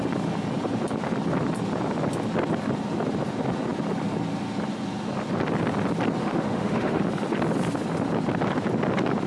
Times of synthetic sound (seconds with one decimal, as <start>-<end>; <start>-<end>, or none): 6.2-7.0